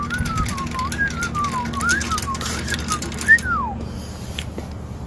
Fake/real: real